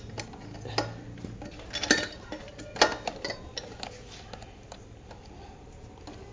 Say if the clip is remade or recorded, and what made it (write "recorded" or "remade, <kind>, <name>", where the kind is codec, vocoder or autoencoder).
recorded